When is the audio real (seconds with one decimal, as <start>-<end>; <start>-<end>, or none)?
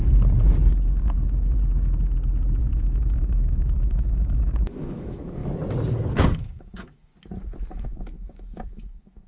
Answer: 0.0-2.6; 5.4-6.1; 7.1-7.7